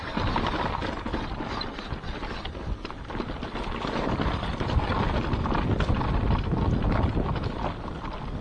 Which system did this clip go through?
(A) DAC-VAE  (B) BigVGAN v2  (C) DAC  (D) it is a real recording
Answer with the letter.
D